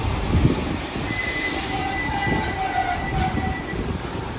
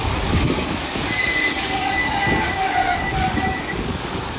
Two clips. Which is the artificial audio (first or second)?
second